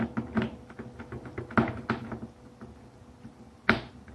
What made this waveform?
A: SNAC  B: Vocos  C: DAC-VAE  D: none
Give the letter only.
D